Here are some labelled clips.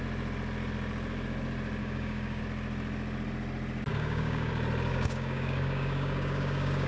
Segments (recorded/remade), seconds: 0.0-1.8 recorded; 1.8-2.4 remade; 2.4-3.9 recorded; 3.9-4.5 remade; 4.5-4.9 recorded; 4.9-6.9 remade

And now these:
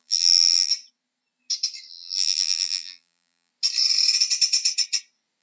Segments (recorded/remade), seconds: 0.0-0.7 remade; 0.7-1.9 recorded; 1.9-3.5 remade; 3.5-5.4 recorded

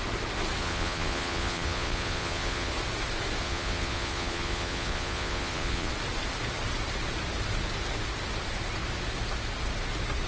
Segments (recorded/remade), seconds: 0.0-0.6 recorded; 0.6-2.7 remade; 2.7-3.4 recorded; 3.4-5.9 remade; 5.9-10.3 recorded

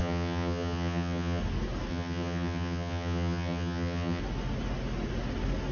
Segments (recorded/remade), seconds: 0.0-1.4 remade; 1.4-1.9 recorded; 1.9-4.2 remade; 4.2-5.7 recorded

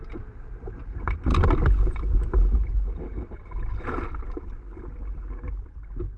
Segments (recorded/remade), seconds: 0.0-6.2 recorded

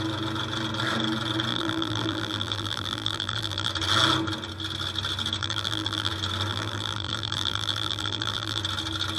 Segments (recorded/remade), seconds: 0.0-1.5 recorded; 1.5-3.7 remade; 3.7-5.4 recorded; 5.4-6.1 remade; 6.1-6.5 recorded; 6.5-8.6 remade; 8.6-9.2 recorded